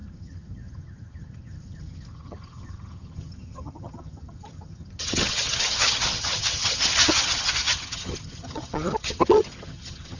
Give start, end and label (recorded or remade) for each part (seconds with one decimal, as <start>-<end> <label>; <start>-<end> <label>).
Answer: 0.0-10.2 remade